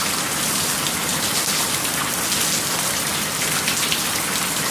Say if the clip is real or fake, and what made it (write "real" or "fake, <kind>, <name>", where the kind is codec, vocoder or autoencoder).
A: real